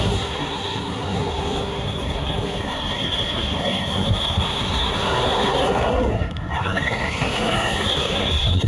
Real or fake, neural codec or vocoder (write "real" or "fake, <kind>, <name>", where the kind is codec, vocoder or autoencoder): fake, codec, SNAC